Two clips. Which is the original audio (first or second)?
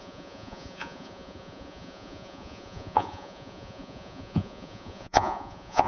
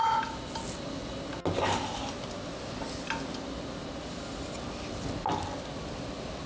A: second